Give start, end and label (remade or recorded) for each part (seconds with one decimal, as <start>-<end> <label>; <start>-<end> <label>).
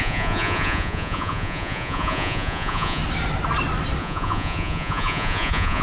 0.0-3.0 remade; 3.0-4.0 recorded; 4.0-5.8 remade